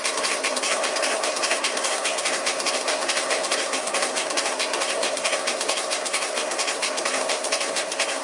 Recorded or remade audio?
remade